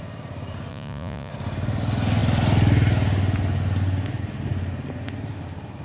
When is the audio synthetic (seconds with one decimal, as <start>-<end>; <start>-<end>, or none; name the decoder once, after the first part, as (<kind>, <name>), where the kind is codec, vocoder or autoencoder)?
0.7-1.3 (vocoder, Vocos)